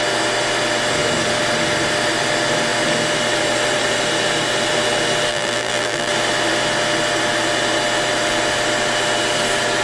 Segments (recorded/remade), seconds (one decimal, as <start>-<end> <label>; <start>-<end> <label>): 0.0-5.3 recorded; 5.3-6.1 remade; 6.1-9.8 recorded